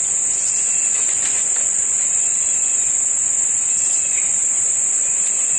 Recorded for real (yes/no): no